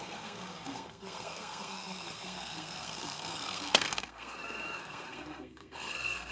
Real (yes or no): no